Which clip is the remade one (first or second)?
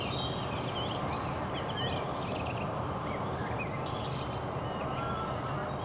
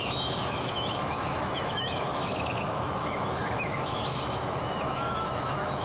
second